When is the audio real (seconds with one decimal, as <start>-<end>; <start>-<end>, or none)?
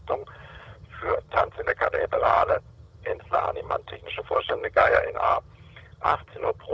none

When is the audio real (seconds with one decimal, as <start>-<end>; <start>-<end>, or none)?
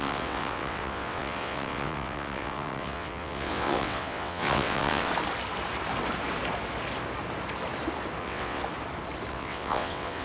5.1-8.2; 8.6-9.3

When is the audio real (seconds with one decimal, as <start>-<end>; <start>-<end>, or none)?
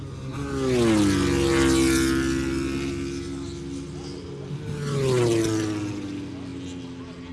0.0-7.3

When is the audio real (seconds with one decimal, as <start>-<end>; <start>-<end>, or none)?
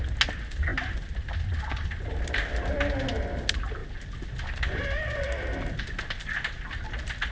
0.0-7.3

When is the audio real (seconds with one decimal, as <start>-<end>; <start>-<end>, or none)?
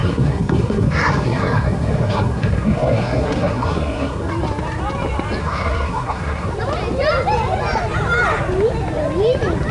4.3-5.4; 6.5-9.7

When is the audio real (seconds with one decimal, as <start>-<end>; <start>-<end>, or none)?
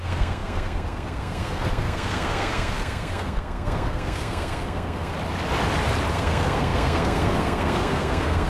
5.1-6.1